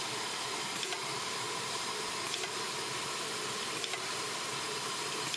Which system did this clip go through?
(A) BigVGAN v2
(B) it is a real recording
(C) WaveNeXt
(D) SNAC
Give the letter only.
B